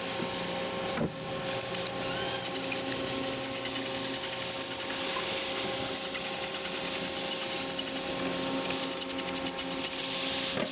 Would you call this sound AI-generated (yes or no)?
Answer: no